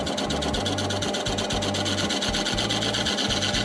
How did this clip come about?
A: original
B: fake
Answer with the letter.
A